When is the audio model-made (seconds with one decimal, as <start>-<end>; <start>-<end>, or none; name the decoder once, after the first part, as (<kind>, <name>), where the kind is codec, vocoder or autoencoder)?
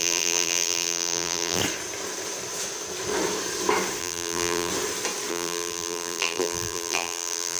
0.0-1.6 (vocoder, BigVGAN v2); 4.0-4.7; 5.3-7.6